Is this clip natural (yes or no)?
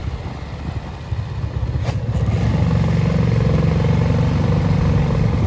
yes